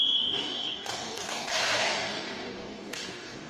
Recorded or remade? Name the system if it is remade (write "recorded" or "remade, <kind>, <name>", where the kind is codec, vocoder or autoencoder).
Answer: remade, codec, DAC